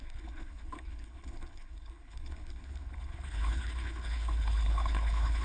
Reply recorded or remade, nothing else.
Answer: remade